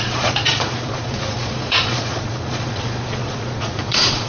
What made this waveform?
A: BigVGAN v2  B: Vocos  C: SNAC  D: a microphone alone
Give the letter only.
B